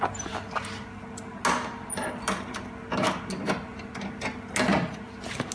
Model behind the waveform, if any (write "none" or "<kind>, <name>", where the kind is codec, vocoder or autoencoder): none